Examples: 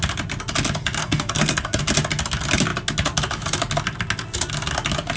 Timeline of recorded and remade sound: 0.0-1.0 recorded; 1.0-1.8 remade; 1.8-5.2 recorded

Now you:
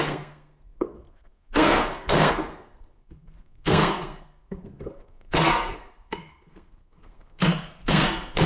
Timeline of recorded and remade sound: 0.0-8.5 remade

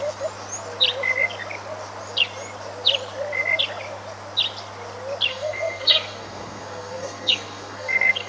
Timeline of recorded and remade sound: 0.0-5.3 recorded; 5.3-8.3 remade

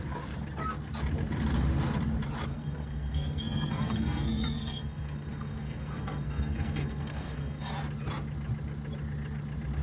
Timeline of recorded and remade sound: 0.0-2.5 recorded; 2.5-7.7 remade; 7.7-9.8 recorded

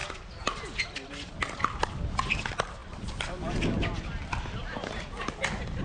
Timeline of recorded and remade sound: 0.0-5.8 recorded